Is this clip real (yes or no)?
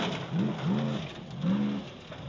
yes